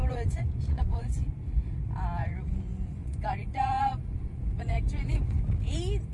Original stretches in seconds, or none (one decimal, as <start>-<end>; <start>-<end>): 1.6-2.2; 5.4-6.1